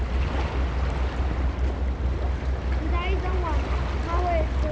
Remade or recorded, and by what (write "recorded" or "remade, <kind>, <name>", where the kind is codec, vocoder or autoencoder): recorded